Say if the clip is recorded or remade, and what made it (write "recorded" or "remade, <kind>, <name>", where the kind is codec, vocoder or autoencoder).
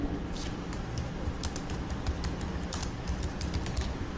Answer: recorded